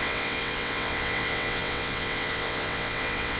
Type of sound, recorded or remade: remade